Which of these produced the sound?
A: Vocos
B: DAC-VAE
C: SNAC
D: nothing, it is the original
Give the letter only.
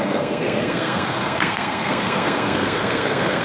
C